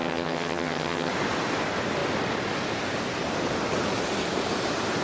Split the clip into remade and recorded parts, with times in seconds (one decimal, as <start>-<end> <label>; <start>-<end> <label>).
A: 0.0-1.1 remade; 1.1-5.0 recorded